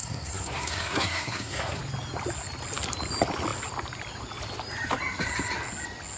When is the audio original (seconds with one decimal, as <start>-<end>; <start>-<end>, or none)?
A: 1.8-6.2